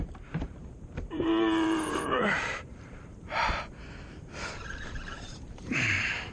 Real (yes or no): no